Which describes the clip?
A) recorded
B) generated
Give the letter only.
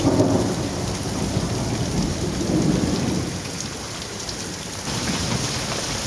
A